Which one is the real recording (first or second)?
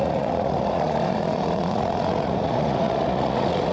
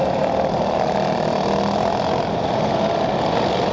second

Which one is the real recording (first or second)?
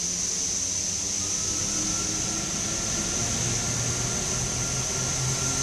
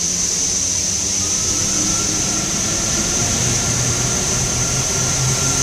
first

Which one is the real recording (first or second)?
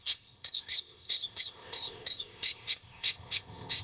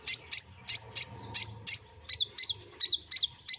second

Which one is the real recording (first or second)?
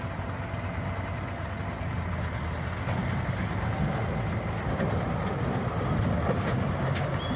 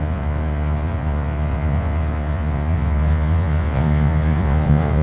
first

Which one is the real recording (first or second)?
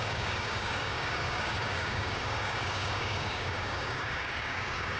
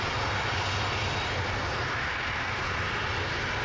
second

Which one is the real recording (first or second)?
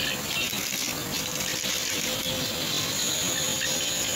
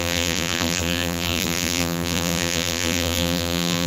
first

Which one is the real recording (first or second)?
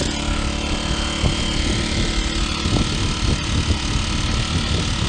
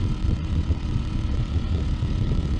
first